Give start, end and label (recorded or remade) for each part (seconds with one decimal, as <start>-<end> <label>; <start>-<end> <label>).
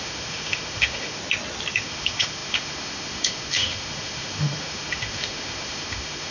0.0-1.2 remade; 1.2-1.7 recorded; 1.7-6.3 remade